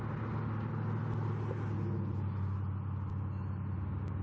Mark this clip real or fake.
real